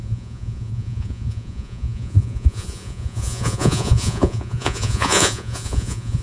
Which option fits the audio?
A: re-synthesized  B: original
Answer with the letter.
A